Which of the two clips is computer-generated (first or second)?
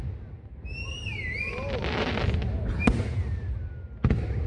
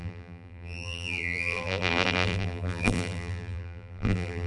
second